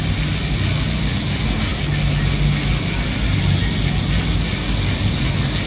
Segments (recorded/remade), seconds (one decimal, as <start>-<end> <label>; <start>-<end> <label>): 0.0-5.7 recorded